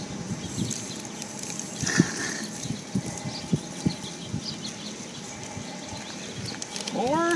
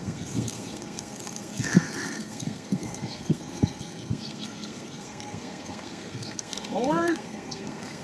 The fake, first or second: second